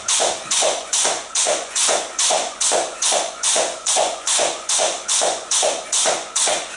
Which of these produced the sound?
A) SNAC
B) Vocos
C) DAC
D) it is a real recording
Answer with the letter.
B